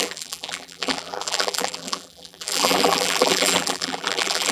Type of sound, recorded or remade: remade